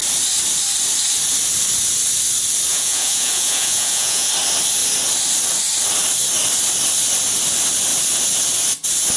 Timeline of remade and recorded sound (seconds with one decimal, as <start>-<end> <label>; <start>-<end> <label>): 0.0-2.7 recorded; 2.7-4.3 remade; 4.3-9.2 recorded